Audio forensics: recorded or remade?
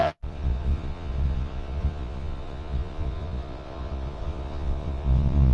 remade